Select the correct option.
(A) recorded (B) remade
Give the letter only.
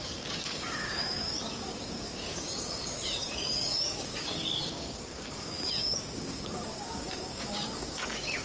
B